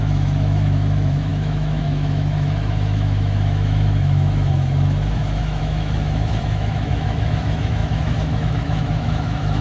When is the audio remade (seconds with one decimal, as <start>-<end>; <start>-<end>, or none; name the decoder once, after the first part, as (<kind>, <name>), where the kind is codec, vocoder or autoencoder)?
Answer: 0.0-9.6 (autoencoder, DAC-VAE)